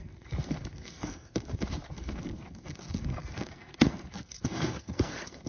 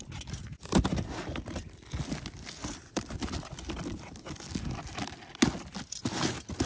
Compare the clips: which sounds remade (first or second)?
first